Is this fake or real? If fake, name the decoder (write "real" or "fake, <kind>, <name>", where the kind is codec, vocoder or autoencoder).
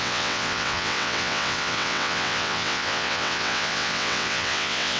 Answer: fake, vocoder, WaveNeXt